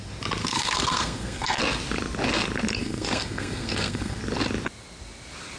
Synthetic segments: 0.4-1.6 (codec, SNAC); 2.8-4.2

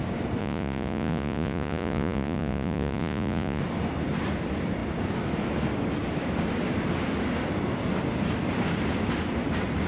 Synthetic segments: 0.4-3.6 (vocoder, Vocos)

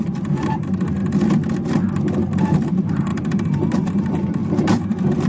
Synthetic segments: 0.0-1.0 (vocoder, BigVGAN v2); 2.5-5.3

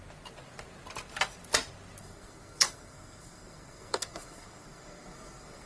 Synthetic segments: 2.0-5.7 (codec, SNAC)